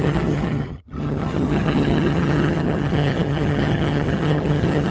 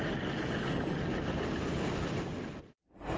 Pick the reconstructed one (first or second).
first